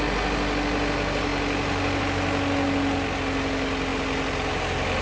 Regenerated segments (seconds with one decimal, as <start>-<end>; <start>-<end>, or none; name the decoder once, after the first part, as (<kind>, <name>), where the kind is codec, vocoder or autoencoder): none